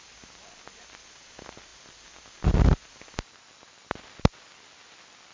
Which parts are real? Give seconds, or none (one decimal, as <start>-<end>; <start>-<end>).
0.0-5.3